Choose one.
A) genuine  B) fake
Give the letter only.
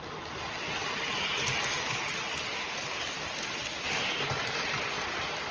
A